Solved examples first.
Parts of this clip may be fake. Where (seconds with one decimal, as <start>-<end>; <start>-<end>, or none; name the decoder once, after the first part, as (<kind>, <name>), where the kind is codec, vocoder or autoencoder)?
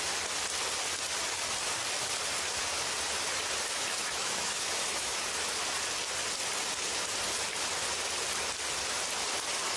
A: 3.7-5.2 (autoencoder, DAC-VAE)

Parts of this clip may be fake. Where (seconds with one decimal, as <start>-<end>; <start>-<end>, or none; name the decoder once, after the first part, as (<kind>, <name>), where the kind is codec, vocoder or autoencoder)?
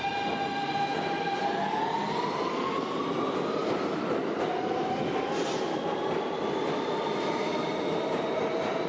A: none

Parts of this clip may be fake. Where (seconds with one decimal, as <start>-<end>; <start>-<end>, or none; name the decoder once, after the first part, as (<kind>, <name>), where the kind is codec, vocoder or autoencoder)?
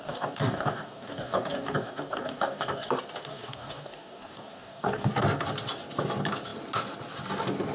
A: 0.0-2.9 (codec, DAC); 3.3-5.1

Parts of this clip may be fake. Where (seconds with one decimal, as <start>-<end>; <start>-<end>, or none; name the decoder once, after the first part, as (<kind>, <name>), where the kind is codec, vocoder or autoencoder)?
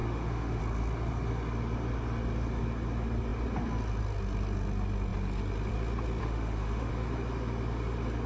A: 0.0-0.6 (autoencoder, DAC-VAE); 6.2-6.9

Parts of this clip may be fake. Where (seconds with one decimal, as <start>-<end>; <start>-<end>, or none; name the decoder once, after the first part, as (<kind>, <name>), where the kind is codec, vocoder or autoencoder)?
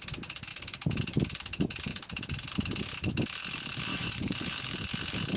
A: 3.9-4.4 (vocoder, Vocos)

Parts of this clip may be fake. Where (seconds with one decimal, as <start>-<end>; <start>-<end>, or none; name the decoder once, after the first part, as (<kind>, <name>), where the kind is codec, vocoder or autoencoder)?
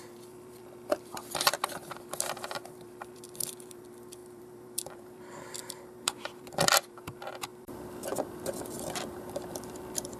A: 0.0-10.2 (vocoder, BigVGAN v2)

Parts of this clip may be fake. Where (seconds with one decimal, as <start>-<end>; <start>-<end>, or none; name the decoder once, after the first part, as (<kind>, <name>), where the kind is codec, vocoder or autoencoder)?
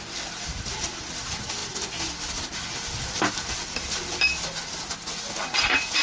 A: none